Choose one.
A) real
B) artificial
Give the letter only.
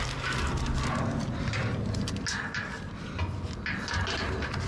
A